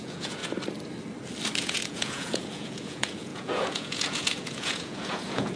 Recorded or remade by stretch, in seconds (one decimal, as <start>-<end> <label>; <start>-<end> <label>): 0.0-0.4 remade; 0.4-1.6 recorded; 1.6-5.6 remade